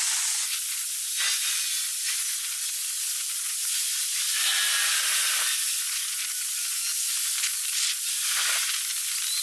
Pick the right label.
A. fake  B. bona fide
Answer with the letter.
B